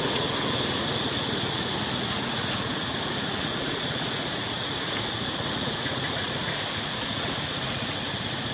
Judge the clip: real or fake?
fake